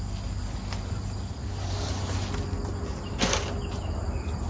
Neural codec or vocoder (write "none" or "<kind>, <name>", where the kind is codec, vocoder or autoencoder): none